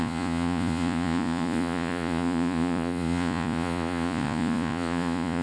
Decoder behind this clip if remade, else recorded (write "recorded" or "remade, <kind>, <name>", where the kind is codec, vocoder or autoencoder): remade, vocoder, Vocos